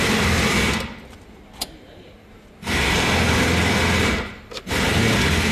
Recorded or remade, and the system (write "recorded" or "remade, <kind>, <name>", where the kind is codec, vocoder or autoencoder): recorded